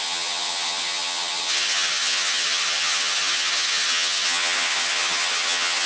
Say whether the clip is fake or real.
fake